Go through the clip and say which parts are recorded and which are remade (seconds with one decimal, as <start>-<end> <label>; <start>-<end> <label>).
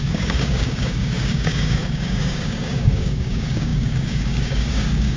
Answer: 0.0-5.2 remade